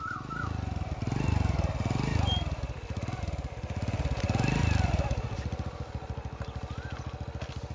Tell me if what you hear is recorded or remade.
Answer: recorded